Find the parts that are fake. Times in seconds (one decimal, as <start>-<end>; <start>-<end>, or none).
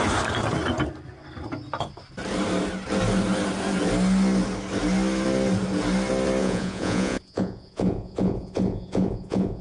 6.4-9.6